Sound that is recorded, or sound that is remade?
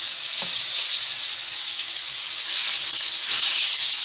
remade